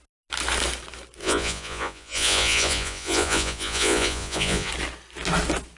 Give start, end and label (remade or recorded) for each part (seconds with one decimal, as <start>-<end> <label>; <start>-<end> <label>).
0.0-1.2 recorded; 1.2-4.7 remade; 4.7-5.8 recorded